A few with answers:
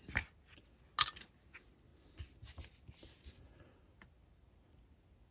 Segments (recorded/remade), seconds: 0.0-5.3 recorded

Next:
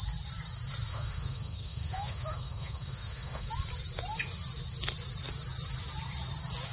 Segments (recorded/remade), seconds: 0.0-0.9 recorded; 0.9-3.5 remade; 3.5-6.7 recorded

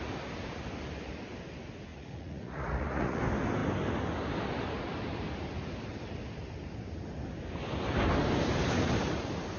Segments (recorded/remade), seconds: 0.0-1.9 recorded; 1.9-3.2 remade; 3.2-9.6 recorded

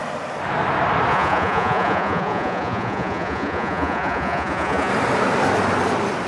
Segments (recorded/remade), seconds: 0.0-1.1 recorded; 1.1-4.9 remade; 4.9-6.3 recorded

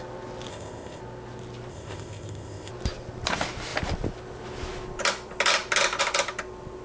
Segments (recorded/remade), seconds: 0.0-0.5 recorded; 0.5-1.0 remade; 1.0-1.7 recorded; 1.7-2.7 remade; 2.7-6.8 recorded

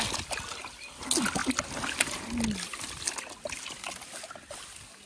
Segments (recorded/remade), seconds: 0.0-5.1 recorded

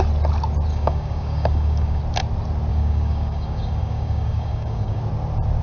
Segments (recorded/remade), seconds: 0.0-0.7 recorded; 0.7-2.0 remade; 2.0-2.7 recorded; 2.7-5.0 remade; 5.0-5.6 recorded

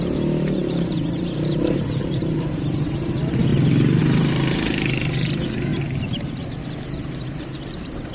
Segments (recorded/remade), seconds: 0.0-3.5 remade; 3.5-4.0 recorded; 4.0-5.7 remade; 5.7-7.0 recorded; 7.0-8.1 remade